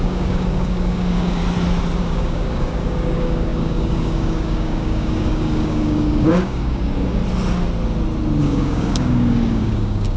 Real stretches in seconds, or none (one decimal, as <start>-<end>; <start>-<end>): 1.4-2.0; 7.2-8.4